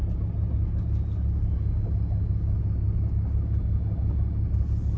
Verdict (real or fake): real